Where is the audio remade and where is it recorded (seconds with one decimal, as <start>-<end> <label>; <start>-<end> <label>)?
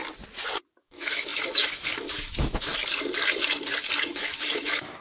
0.0-0.8 recorded; 0.8-2.7 remade; 2.7-4.1 recorded; 4.1-5.0 remade